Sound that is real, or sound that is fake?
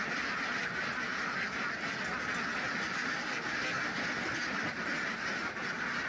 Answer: real